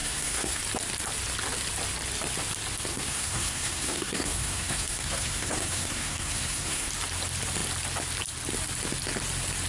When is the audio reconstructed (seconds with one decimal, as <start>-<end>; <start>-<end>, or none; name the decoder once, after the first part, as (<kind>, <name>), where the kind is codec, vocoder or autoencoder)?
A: 0.0-0.6 (codec, SNAC); 2.9-6.9